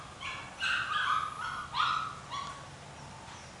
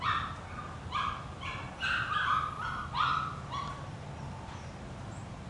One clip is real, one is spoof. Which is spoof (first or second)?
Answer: second